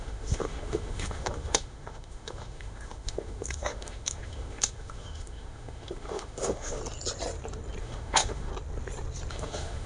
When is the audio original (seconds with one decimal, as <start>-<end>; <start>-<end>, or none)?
6.8-7.8; 8.5-9.3